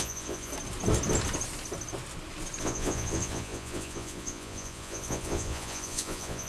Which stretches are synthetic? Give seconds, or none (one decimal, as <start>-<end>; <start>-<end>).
0.0-0.5; 2.6-6.5